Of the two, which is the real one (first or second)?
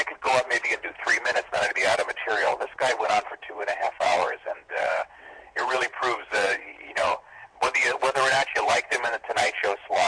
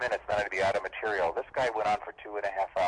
second